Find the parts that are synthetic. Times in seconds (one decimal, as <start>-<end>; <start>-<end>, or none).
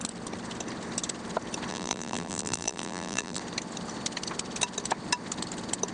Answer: 1.7-3.4